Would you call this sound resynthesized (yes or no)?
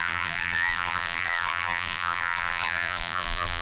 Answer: yes